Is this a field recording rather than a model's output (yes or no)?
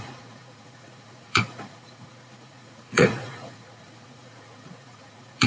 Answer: no